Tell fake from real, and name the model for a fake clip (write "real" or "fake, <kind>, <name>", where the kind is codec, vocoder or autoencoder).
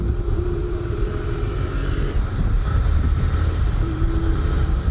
fake, vocoder, BigVGAN v2